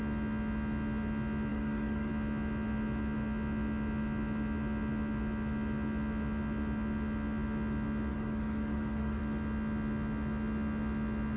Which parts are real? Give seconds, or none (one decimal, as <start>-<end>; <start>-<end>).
0.0-1.5; 2.1-8.1; 9.2-11.4